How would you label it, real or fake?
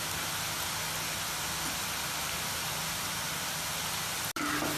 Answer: real